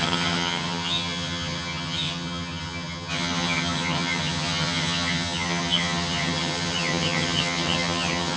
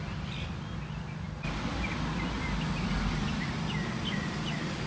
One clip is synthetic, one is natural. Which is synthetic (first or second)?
first